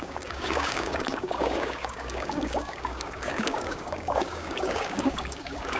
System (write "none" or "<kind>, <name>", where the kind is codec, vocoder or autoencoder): codec, DAC